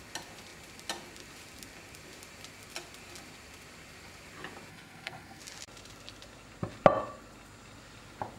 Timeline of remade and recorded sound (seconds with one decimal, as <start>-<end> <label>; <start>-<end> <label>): 0.0-4.7 recorded; 4.7-5.4 remade; 5.4-8.4 recorded